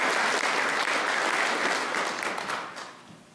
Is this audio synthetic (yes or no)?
no